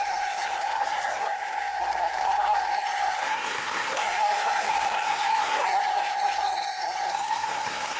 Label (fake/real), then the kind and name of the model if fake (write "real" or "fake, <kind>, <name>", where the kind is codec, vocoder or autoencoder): fake, codec, SNAC